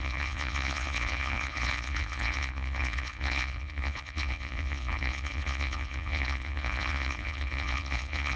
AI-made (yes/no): yes